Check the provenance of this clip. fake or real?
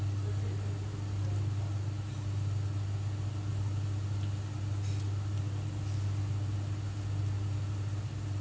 real